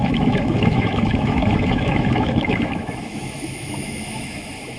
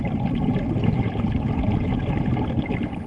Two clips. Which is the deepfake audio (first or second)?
first